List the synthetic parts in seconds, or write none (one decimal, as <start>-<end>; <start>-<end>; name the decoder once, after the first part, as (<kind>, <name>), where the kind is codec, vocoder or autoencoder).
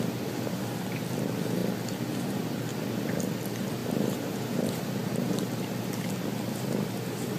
3.8-5.3 (vocoder, BigVGAN v2)